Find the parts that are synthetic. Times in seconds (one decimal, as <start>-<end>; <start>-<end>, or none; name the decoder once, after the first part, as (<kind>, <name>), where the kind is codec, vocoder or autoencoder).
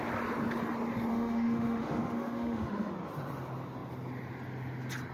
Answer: 1.1-2.9 (autoencoder, DAC-VAE)